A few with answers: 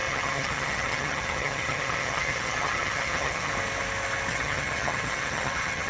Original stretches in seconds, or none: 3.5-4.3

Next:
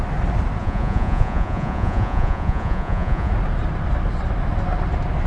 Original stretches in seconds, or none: 0.0-0.6; 3.3-5.3

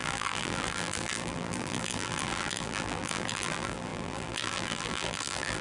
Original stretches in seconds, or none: none

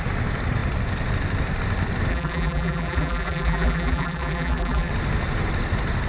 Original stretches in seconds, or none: 0.0-2.1; 4.9-6.1

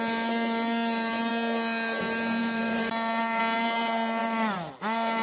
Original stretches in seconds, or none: 0.0-2.4; 3.4-4.2; 4.7-5.2

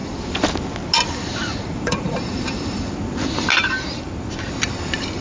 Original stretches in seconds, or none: 0.0-1.5; 2.8-3.5; 4.1-5.2

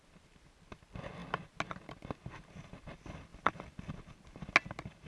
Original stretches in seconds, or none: 0.0-5.1